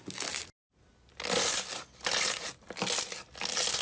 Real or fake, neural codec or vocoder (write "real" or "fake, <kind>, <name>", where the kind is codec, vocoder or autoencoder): real